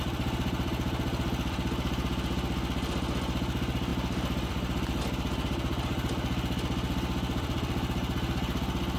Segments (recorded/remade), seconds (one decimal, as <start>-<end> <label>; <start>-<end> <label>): 0.0-9.0 recorded